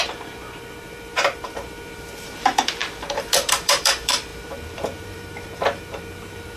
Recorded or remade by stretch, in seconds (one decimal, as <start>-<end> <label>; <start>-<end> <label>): 0.0-6.6 remade